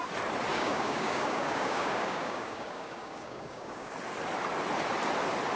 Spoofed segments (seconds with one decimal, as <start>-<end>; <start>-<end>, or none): 0.5-3.9